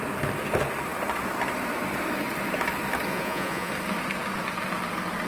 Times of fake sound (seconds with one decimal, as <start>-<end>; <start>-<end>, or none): 3.1-3.7